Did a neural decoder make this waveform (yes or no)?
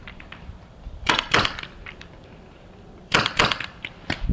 yes